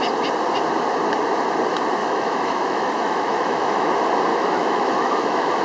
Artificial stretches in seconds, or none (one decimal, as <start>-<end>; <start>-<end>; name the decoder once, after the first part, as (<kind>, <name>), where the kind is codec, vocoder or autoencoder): 2.0-3.9 (autoencoder, DAC-VAE); 4.3-5.6